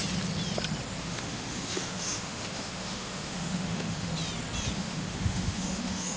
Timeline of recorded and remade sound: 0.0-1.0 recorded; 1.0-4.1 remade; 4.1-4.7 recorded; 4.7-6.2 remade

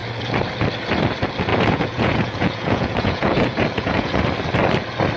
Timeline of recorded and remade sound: 0.0-1.5 recorded; 1.5-4.2 remade; 4.2-5.2 recorded

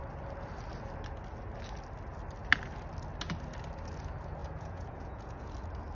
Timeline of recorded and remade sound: 0.0-4.4 recorded; 4.4-5.5 remade; 5.5-5.9 recorded

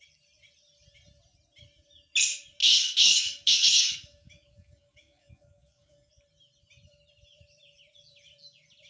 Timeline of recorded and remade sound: 0.0-2.6 recorded; 2.6-6.1 remade; 6.1-8.9 recorded

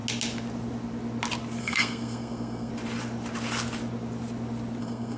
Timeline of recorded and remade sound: 0.0-1.6 recorded; 1.6-2.7 remade; 2.7-4.8 recorded; 4.8-5.2 remade

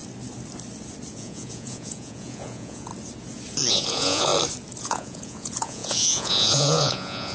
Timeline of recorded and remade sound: 0.0-1.1 recorded; 1.1-2.9 remade; 2.9-3.7 recorded; 3.7-4.3 remade; 4.3-4.8 recorded; 4.8-7.3 remade